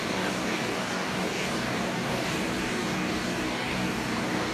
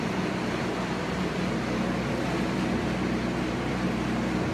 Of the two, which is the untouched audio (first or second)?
second